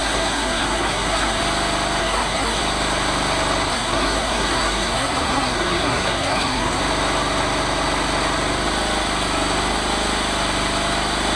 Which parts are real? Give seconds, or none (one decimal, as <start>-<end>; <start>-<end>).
1.4-2.0; 2.6-3.7; 6.8-11.4